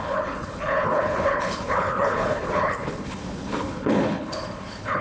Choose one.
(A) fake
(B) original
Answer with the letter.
A